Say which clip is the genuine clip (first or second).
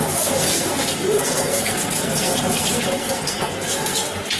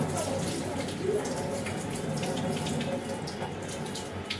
second